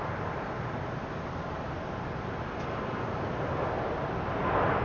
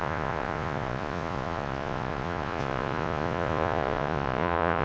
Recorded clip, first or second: first